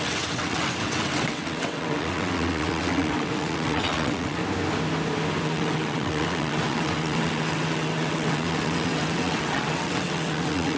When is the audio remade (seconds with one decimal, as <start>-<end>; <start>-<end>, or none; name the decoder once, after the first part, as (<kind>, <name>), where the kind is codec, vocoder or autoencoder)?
0.0-4.4 (vocoder, WaveNeXt); 5.4-10.8